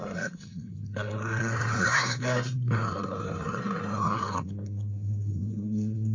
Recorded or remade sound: remade